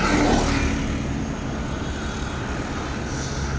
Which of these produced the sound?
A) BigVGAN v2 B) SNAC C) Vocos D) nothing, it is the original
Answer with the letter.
D